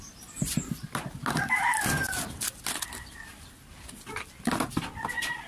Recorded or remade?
recorded